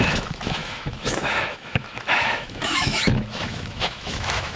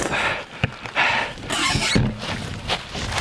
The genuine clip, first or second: second